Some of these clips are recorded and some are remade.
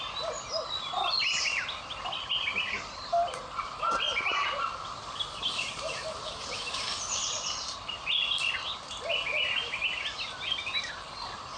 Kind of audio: recorded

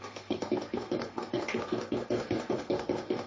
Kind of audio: remade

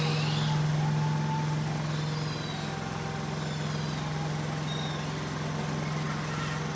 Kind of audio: recorded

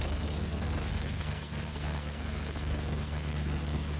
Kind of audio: remade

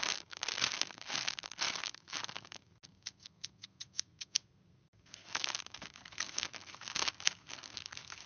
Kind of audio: remade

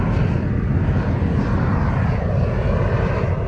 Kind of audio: recorded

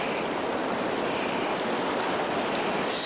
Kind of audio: recorded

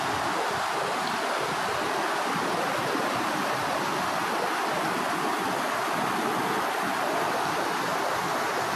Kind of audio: recorded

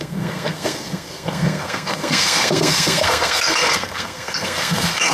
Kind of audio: remade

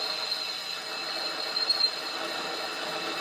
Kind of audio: recorded